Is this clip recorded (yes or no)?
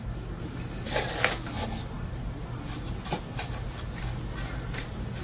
yes